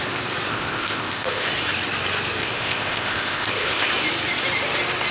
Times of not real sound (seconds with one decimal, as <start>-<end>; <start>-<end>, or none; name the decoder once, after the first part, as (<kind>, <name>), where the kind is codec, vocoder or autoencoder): 0.5-1.5 (codec, ZipCodec); 2.4-3.9